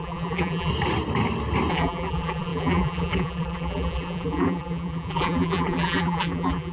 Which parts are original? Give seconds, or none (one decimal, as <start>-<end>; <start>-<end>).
0.7-1.7